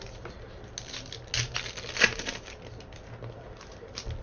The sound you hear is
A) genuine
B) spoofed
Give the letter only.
A